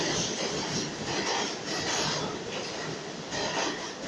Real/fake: real